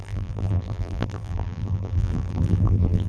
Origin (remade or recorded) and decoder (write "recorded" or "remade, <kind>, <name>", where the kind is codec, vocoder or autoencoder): remade, vocoder, BigVGAN v2